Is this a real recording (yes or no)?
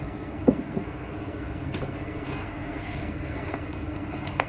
no